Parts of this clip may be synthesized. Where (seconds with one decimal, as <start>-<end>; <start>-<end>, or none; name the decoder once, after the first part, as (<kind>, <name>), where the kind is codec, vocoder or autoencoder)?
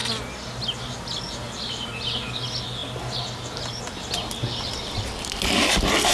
none